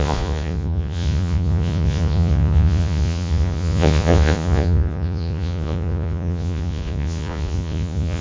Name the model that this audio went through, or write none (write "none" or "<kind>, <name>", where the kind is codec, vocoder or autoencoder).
vocoder, Vocos